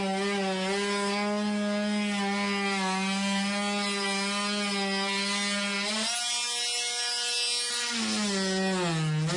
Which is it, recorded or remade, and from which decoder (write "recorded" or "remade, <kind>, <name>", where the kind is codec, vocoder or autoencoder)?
recorded